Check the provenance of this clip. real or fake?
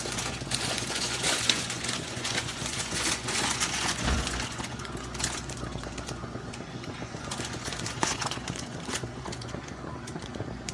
fake